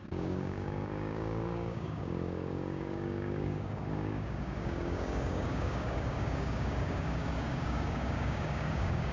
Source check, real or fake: fake